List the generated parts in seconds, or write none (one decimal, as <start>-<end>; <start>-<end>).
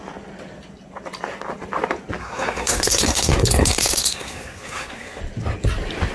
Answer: 2.2-5.2